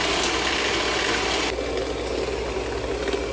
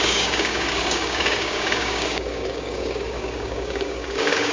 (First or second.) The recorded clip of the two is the first